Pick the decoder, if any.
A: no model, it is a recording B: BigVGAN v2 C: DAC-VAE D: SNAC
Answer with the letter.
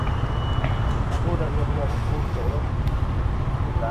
A